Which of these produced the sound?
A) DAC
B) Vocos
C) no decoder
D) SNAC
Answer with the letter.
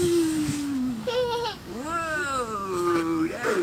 A